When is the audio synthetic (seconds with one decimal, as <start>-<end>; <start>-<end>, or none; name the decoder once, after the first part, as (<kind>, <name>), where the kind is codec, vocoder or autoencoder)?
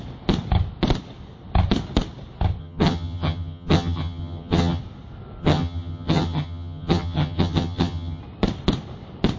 2.6-4.8 (vocoder, HiFi-GAN); 5.4-8.2